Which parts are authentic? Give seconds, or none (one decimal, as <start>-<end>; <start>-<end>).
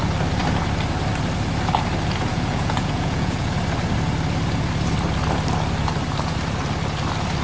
0.0-2.3; 3.5-7.4